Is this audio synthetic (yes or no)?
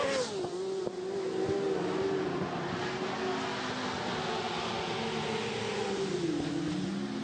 no